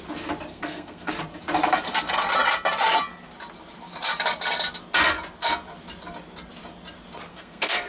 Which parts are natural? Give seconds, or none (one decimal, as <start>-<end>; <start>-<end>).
0.0-0.5; 1.1-7.3